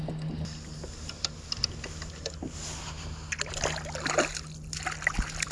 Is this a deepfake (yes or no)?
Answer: no